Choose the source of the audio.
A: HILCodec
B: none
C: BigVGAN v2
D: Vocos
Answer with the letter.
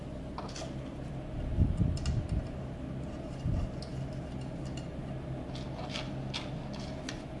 B